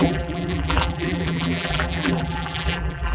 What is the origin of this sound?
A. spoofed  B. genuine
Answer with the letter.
A